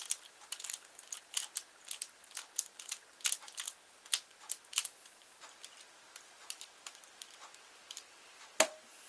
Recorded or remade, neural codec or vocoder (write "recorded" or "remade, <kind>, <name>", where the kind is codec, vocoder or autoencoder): recorded